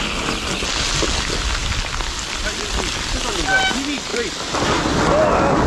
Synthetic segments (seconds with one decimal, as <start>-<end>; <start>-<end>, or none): none